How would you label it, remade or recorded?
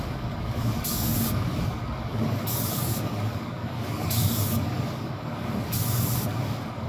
remade